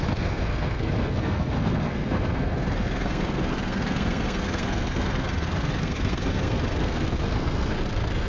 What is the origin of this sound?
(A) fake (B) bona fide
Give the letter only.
A